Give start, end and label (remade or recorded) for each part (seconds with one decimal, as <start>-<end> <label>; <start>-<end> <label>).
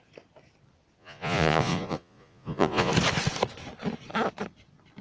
0.0-1.0 recorded; 1.0-2.9 remade; 2.9-5.0 recorded